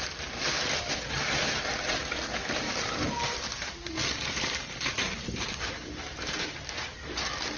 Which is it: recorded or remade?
recorded